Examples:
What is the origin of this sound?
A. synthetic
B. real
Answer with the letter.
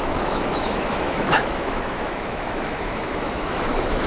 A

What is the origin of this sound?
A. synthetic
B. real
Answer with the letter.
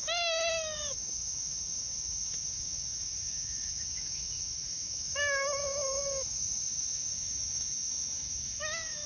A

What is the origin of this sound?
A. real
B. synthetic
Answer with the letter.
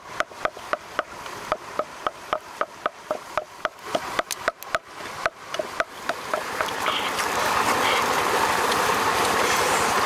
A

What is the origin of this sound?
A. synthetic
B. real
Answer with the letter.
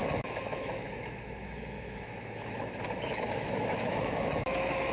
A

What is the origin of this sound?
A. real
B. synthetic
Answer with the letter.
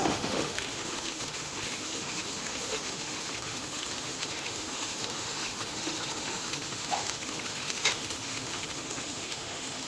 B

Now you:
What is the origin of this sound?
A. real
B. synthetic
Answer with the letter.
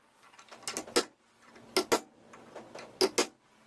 A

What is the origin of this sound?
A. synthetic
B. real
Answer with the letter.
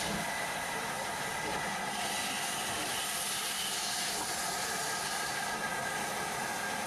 B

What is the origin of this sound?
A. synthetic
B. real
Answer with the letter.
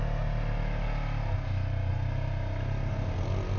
B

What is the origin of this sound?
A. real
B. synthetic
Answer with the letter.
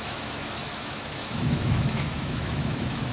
B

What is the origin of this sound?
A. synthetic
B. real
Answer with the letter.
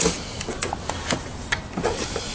B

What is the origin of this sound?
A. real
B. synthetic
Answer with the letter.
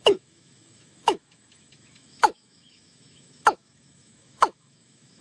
B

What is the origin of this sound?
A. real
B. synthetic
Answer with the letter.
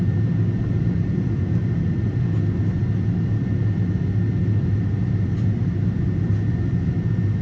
A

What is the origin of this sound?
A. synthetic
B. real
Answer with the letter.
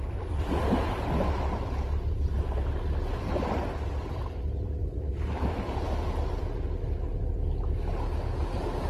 B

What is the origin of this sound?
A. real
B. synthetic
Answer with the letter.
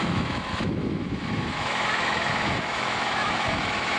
B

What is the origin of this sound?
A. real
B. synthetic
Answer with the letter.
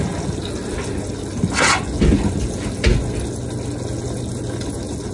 A